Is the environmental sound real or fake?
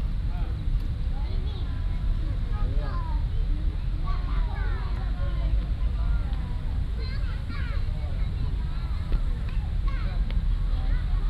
real